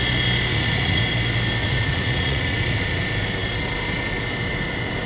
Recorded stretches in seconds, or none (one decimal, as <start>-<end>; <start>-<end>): 0.0-0.5; 1.0-1.6; 3.0-5.1